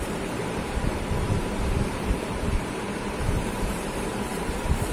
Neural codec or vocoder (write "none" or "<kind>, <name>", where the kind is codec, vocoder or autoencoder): vocoder, BigVGAN v2